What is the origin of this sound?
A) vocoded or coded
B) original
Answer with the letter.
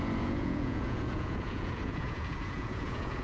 A